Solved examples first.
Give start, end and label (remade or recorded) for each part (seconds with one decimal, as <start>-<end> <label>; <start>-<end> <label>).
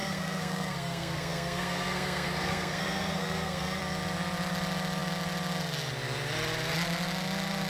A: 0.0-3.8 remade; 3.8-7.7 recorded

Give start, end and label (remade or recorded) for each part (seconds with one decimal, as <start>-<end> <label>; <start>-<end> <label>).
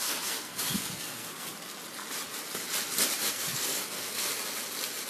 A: 0.0-1.5 remade; 1.5-3.3 recorded; 3.3-4.3 remade; 4.3-5.1 recorded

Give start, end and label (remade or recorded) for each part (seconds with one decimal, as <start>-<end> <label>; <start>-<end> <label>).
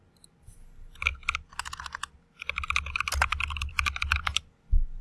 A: 0.0-5.0 recorded